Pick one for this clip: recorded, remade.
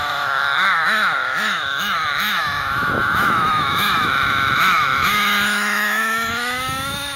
remade